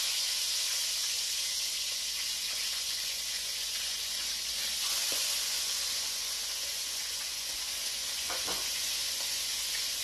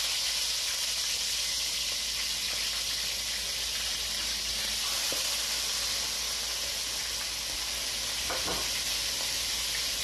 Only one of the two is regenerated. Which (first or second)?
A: first